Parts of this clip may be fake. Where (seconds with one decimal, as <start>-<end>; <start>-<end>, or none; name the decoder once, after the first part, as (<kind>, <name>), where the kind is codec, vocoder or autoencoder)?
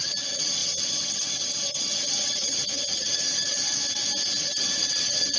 0.0-3.8 (vocoder, HiFi-GAN); 4.4-5.4